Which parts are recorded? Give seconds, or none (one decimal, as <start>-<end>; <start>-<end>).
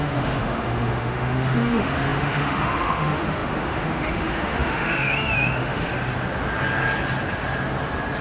5.9-8.2